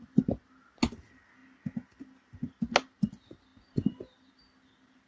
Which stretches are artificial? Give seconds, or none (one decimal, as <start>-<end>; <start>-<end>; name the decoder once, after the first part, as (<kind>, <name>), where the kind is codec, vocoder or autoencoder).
none